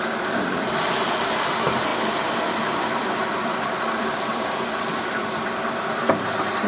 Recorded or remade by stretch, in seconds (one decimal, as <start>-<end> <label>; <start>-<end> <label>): 0.0-6.7 remade